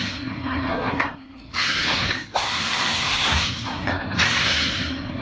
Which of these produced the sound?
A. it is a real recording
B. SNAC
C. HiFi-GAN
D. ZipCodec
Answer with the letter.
B